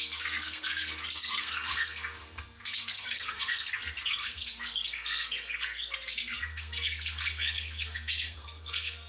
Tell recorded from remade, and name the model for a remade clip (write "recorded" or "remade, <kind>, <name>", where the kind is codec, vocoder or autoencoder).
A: remade, codec, SNAC